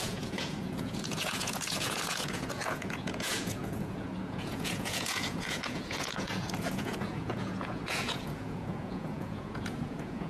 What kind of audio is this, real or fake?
fake